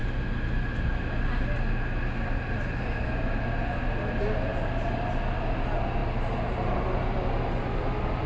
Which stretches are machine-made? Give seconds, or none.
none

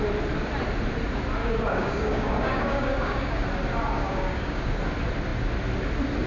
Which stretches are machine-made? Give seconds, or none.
1.4-3.4 (codec, DAC); 4.0-4.8

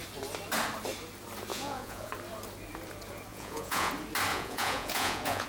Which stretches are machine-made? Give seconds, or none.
1.5-2.1 (vocoder, Vocos); 3.3-3.9; 4.3-5.5

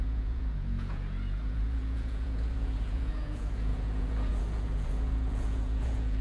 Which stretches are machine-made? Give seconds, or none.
0.0-6.2 (vocoder, Vocos)